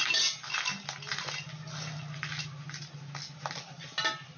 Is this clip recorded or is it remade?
recorded